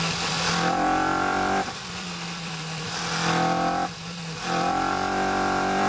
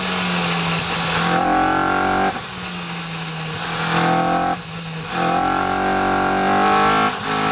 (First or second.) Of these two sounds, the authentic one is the second